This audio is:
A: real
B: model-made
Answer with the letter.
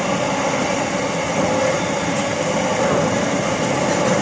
A